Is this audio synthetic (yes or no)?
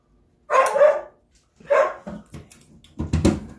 no